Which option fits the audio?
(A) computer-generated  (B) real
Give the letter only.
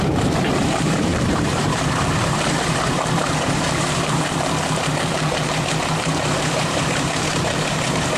A